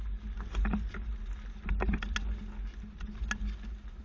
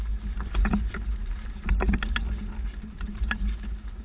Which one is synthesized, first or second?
second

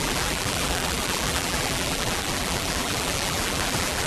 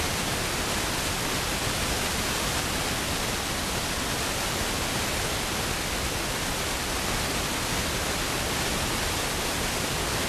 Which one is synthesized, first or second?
first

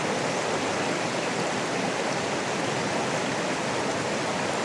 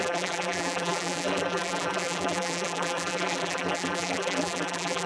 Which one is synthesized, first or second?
second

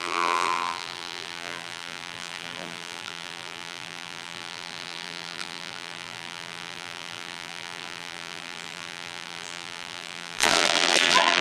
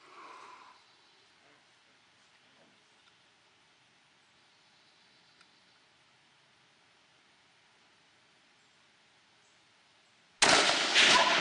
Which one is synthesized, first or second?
first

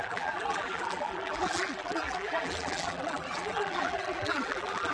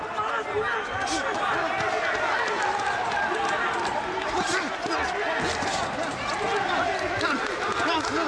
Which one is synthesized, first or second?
first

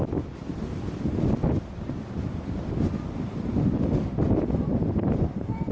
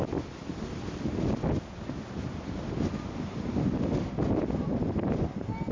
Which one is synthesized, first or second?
first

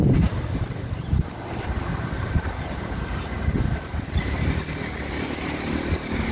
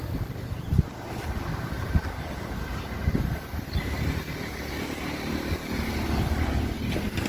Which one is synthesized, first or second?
first